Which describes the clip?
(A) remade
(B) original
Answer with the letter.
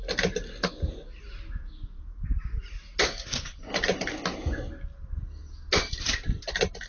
B